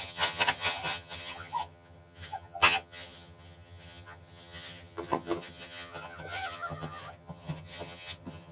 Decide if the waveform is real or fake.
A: fake